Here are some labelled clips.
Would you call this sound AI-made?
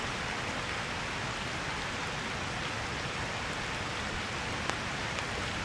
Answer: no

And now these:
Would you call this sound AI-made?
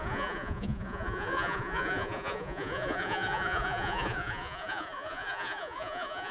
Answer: yes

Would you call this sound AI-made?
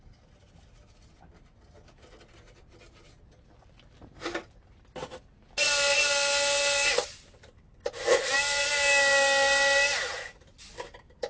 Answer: no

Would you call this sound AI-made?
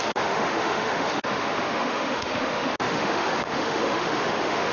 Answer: yes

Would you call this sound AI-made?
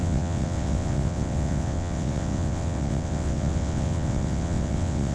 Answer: yes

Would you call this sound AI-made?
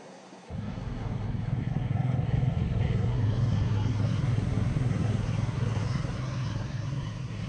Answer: yes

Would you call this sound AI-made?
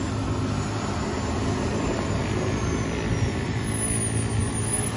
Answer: no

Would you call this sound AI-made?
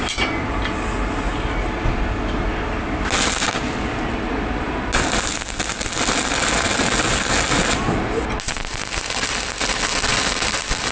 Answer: no